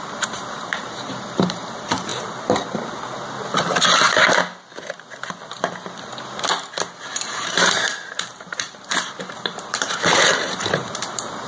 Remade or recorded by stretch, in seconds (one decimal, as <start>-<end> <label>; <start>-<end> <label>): 0.0-2.1 remade; 2.1-7.2 recorded; 7.2-11.5 remade

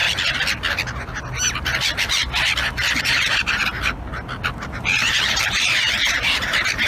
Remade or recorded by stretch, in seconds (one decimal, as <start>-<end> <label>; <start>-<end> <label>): 0.0-3.0 recorded; 3.0-4.1 remade; 4.1-4.7 recorded; 4.7-6.9 remade

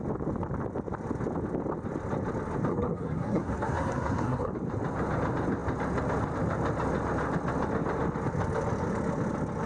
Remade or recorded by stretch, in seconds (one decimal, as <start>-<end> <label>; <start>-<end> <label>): 0.0-2.7 recorded; 2.7-4.5 remade; 4.5-9.7 recorded

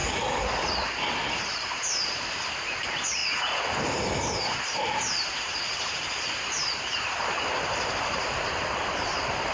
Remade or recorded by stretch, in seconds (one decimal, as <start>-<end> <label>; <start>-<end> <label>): 0.0-1.5 recorded; 1.5-3.2 remade; 3.2-3.8 recorded; 3.8-9.5 remade

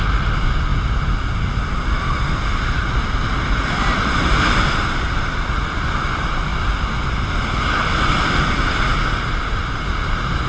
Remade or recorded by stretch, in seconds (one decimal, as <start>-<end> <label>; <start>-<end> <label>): 0.0-10.5 recorded